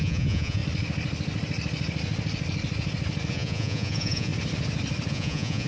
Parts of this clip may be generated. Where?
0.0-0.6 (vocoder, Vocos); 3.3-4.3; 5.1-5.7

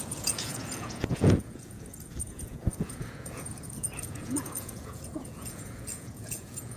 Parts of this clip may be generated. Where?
0.0-6.8 (vocoder, Vocos)

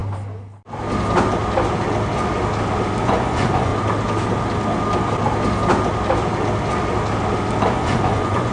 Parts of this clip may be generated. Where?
3.0-3.7 (vocoder, Vocos); 7.7-8.5

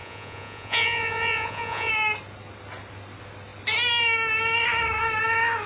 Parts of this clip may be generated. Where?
0.0-1.9 (vocoder, Vocos)

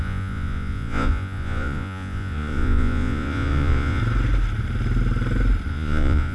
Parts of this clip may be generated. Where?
0.0-4.0 (vocoder, Vocos); 5.7-6.3

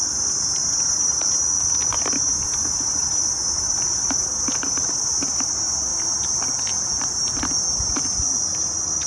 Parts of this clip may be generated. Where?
none